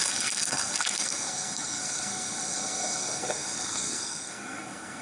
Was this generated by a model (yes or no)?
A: yes